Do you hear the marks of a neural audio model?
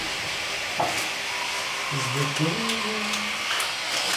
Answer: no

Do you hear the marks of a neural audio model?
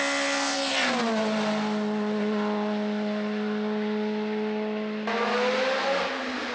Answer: no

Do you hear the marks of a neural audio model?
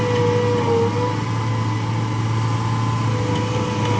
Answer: no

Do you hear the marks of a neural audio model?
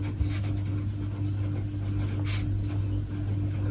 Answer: no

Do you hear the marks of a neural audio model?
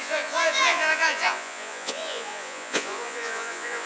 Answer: yes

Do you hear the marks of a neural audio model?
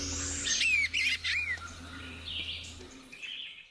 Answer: no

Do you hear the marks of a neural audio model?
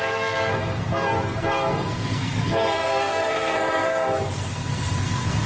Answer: yes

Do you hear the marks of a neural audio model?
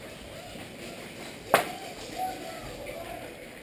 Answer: no